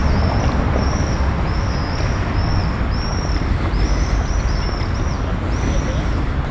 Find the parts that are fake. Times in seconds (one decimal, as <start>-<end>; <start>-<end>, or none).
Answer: 0.0-1.5; 2.6-4.6